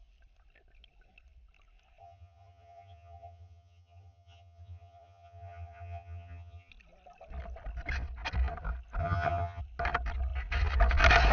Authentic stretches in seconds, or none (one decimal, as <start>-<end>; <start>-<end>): 0.0-2.0; 6.7-9.0; 9.6-11.3